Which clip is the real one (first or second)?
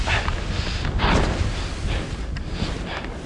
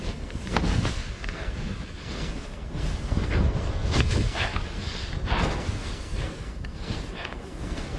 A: first